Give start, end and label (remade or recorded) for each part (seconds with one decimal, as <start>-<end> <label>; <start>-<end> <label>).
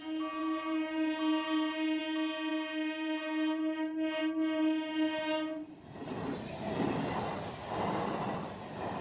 0.0-0.4 recorded; 0.4-2.0 remade; 2.0-2.5 recorded; 2.5-3.6 remade; 3.6-9.0 recorded